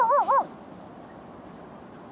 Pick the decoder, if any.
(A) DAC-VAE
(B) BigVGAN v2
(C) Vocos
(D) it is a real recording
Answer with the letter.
D